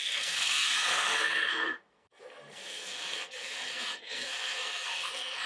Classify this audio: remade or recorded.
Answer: remade